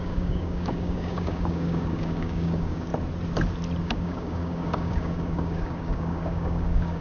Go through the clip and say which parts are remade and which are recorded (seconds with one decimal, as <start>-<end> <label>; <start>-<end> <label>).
0.0-2.9 remade; 2.9-3.8 recorded; 3.8-7.0 remade

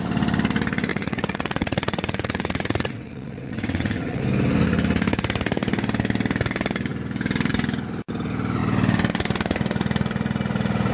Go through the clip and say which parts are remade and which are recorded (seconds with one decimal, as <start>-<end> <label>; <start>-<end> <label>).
0.0-0.9 recorded; 0.9-4.2 remade; 4.2-10.9 recorded

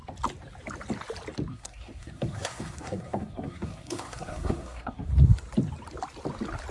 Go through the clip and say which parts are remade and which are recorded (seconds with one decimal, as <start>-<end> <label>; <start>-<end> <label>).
0.0-1.5 recorded; 1.5-5.1 remade; 5.1-6.7 recorded

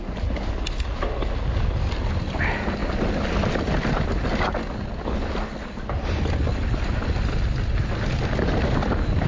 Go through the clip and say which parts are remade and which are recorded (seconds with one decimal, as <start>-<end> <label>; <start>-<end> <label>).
0.0-9.3 recorded

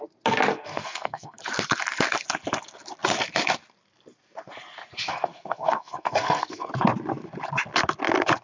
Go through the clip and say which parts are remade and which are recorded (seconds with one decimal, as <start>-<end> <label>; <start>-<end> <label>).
0.0-0.5 recorded; 0.5-1.4 remade; 1.4-5.1 recorded; 5.1-6.7 remade; 6.7-8.4 recorded

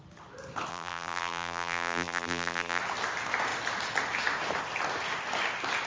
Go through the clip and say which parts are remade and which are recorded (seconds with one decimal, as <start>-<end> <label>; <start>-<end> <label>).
0.0-0.7 recorded; 0.7-2.8 remade; 2.8-5.9 recorded

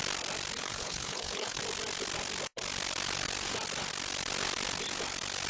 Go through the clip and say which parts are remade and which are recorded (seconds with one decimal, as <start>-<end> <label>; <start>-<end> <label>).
0.0-0.6 recorded; 0.6-1.6 remade; 1.6-5.5 recorded